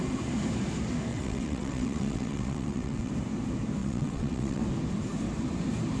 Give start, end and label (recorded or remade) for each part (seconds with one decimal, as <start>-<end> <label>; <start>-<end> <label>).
0.0-1.1 recorded; 1.1-3.1 remade; 3.1-3.8 recorded; 3.8-4.6 remade; 4.6-6.0 recorded